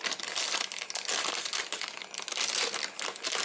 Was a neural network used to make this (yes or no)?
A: no